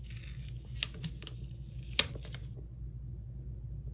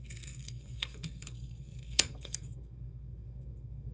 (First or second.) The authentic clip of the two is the first